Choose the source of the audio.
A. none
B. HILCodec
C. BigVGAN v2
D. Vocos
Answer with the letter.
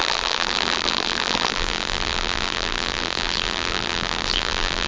C